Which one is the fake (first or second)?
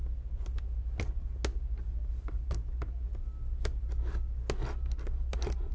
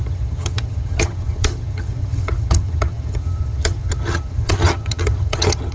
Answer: second